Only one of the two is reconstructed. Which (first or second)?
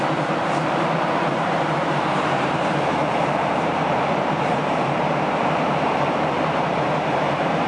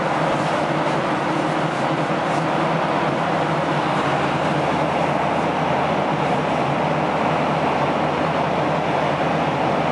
first